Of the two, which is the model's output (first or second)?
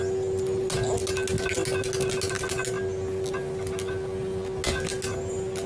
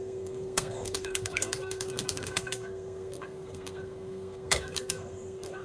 second